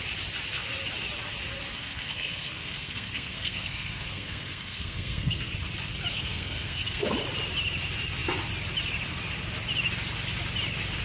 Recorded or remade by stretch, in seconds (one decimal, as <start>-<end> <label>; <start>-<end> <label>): 0.0-1.7 recorded; 1.7-5.5 remade; 5.5-6.1 recorded; 6.1-7.0 remade; 7.0-11.0 recorded